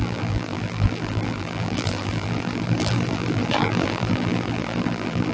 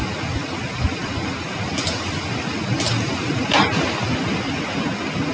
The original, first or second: second